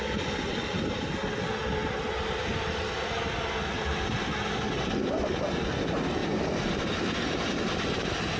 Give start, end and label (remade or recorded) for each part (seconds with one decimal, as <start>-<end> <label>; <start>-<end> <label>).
0.0-0.5 recorded; 0.5-1.1 remade; 1.1-6.2 recorded; 6.2-8.4 remade